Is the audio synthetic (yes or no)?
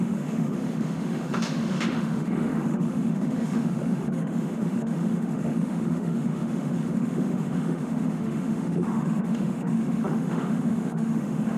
yes